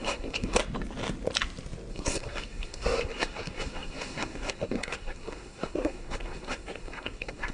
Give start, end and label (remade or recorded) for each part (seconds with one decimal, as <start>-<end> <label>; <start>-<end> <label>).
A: 0.0-0.6 remade; 0.6-1.9 recorded; 1.9-7.5 remade